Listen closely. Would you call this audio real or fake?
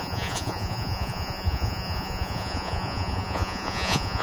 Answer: fake